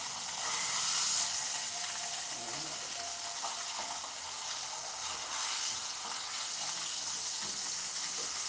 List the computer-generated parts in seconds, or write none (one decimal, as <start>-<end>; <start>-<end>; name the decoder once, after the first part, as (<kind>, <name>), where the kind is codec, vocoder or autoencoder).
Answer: none

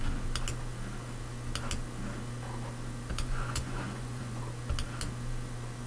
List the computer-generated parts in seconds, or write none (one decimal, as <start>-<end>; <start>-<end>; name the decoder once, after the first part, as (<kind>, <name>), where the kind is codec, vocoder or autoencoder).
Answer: 3.1-4.4 (vocoder, Vocos)

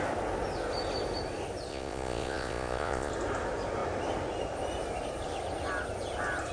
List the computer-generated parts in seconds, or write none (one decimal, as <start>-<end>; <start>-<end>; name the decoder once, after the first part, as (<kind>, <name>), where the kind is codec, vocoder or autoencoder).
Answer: 1.7-3.1 (vocoder, Vocos)

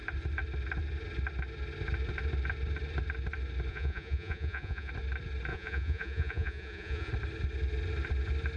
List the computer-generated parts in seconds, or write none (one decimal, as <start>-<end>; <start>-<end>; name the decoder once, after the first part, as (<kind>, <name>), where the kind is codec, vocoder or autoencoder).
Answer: 3.7-4.9 (vocoder, Vocos); 5.5-7.1

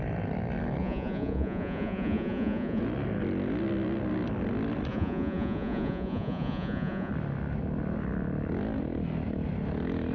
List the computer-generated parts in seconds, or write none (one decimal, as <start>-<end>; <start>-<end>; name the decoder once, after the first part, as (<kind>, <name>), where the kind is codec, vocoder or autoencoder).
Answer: 0.8-2.8 (vocoder, Vocos); 4.9-7.1